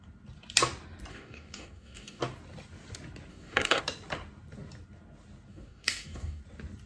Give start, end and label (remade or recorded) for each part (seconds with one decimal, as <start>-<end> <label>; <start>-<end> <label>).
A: 0.0-1.1 recorded; 1.1-2.2 remade; 2.2-3.3 recorded; 3.3-3.8 remade; 3.8-5.5 recorded; 5.5-6.4 remade; 6.4-6.9 recorded